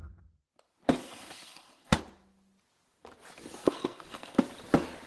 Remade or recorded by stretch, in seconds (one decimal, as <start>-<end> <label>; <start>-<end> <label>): 0.0-1.0 recorded; 1.0-2.0 remade; 2.0-3.6 recorded; 3.6-4.4 remade; 4.4-5.1 recorded